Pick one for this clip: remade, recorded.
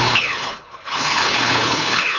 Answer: remade